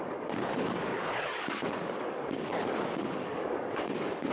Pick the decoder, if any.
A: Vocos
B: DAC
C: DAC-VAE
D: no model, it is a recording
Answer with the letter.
B